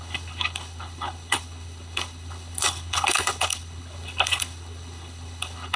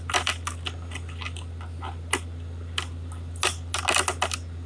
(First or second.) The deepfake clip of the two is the first